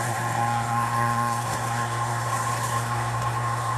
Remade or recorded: remade